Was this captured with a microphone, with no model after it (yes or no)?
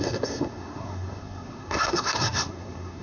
no